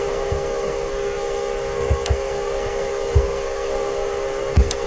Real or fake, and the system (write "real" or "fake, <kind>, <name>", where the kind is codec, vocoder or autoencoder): fake, codec, SNAC